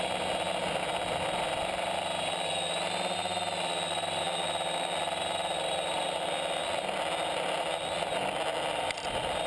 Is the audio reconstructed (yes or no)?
no